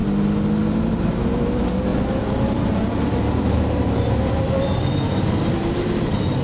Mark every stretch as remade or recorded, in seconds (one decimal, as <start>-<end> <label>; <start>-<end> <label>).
0.0-0.7 recorded; 0.7-6.4 remade